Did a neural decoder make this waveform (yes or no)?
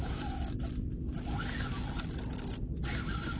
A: no